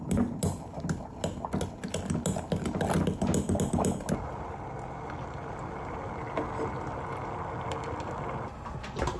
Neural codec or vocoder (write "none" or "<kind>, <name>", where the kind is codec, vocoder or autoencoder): none